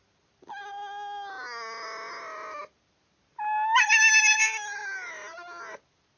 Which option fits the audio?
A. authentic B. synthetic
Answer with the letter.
A